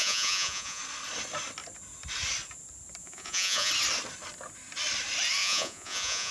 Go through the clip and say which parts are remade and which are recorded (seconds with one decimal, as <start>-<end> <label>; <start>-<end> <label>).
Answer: 0.0-0.8 remade; 0.8-3.0 recorded; 3.0-3.7 remade; 3.7-5.4 recorded; 5.4-6.3 remade